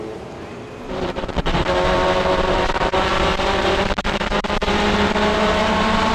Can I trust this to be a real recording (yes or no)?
no